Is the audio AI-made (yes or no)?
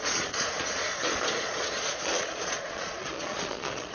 yes